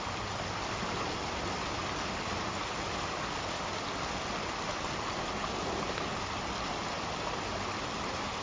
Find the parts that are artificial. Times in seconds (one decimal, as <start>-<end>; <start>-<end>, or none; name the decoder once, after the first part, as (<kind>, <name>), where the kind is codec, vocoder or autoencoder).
none